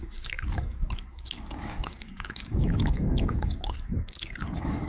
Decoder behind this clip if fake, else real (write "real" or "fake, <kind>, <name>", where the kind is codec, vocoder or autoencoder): fake, codec, DAC